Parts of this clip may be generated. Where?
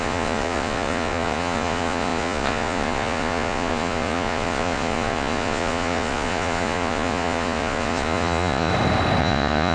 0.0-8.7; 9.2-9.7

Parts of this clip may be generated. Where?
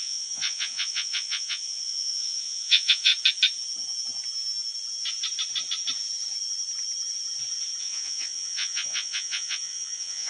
0.0-3.1; 7.8-10.3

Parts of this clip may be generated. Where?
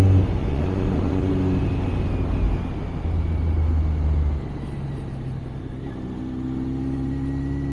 0.4-1.3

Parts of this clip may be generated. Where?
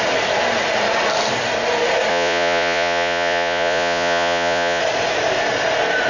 2.1-4.8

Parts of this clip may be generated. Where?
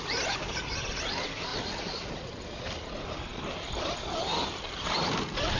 1.5-2.4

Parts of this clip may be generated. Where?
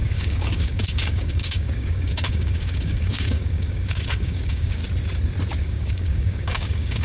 0.0-4.8; 5.6-7.0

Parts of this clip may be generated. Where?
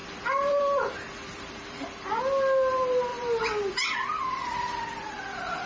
0.0-2.2; 3.1-5.7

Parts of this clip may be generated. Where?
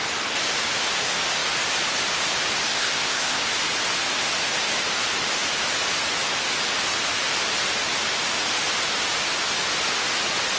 2.7-3.4